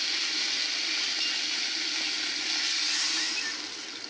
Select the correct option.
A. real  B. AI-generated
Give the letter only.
A